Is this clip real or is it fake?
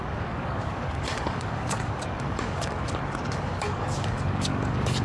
fake